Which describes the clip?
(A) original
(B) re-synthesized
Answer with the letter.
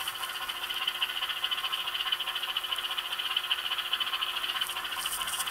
A